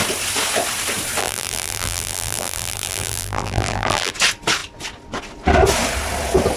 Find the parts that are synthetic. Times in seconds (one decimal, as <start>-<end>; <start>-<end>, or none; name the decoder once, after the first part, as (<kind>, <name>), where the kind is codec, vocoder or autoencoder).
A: 1.2-4.1 (vocoder, BigVGAN v2)